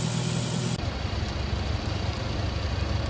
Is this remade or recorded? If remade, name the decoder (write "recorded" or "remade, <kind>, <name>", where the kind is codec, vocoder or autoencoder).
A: recorded